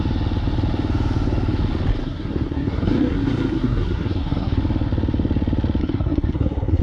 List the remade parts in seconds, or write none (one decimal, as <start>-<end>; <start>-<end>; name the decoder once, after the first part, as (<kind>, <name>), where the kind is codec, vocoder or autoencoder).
2.0-4.6 (codec, SNAC); 5.8-6.8